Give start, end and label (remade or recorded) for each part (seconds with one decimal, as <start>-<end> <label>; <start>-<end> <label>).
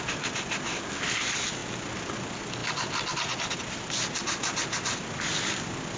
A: 0.0-6.0 recorded